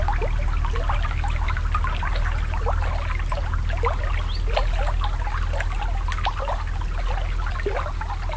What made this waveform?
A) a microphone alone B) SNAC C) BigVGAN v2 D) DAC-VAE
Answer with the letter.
A